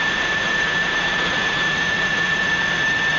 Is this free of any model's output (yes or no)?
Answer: no